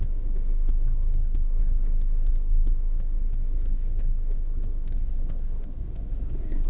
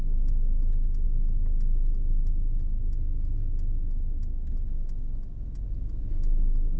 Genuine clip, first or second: second